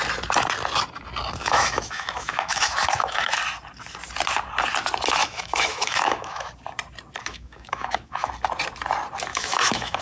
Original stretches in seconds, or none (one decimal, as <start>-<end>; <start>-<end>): 0.0-1.4; 3.4-5.2; 6.5-7.2; 8.3-9.3